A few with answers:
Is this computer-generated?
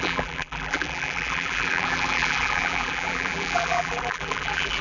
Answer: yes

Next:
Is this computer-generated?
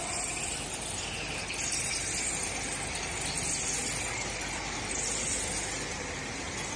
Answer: no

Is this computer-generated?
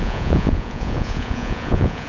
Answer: yes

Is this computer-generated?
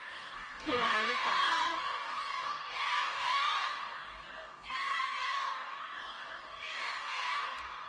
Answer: yes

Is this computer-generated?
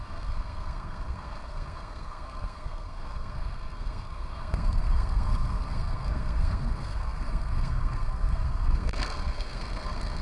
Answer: yes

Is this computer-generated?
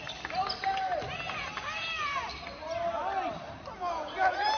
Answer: no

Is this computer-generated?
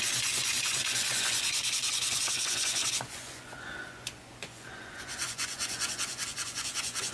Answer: yes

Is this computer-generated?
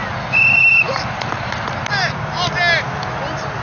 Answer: no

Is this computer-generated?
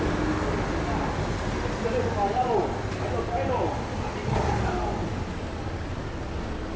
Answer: no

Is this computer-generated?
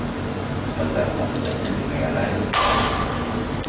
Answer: no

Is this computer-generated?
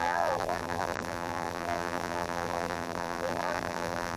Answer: yes